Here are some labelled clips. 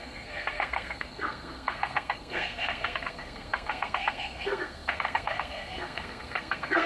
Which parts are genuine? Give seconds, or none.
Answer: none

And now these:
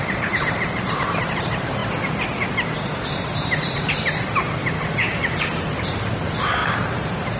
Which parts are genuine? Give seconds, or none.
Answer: 1.8-3.1

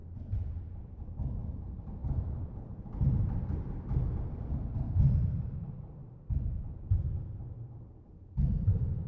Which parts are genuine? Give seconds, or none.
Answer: 0.0-1.0; 2.0-3.2; 6.0-6.9

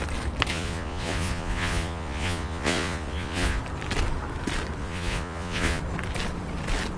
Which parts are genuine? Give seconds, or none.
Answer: 0.0-0.5; 3.6-4.8; 5.8-7.0

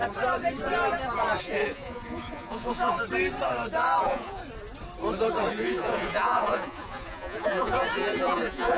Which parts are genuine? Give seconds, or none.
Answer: 0.0-1.4; 3.0-4.0; 4.4-5.5